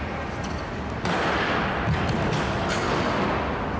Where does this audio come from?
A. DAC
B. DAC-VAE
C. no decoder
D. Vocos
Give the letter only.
C